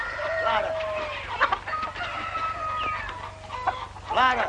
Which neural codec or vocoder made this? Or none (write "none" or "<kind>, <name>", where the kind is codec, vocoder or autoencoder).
none